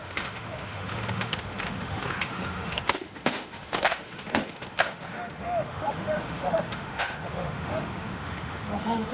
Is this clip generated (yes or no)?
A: yes